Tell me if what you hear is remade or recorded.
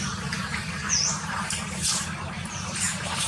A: remade